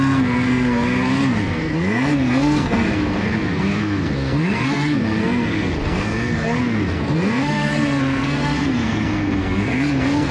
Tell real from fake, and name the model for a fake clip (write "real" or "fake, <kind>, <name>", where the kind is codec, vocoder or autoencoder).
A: fake, codec, SNAC